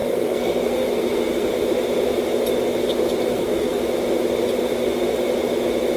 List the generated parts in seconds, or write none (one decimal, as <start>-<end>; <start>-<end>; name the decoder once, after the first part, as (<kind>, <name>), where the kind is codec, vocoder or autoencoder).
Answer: 0.0-1.5 (codec, SNAC); 3.3-3.8